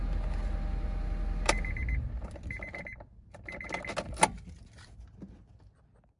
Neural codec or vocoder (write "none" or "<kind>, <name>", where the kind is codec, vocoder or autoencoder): none